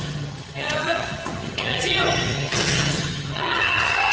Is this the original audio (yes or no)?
no